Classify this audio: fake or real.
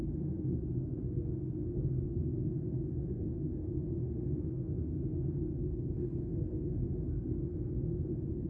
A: fake